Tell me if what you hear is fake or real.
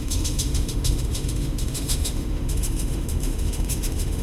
fake